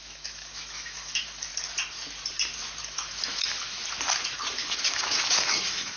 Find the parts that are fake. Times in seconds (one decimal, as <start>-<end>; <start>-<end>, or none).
0.0-1.5; 2.8-3.8; 4.3-6.0